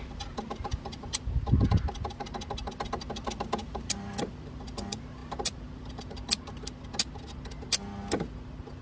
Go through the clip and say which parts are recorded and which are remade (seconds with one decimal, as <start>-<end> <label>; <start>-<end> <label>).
0.0-8.8 recorded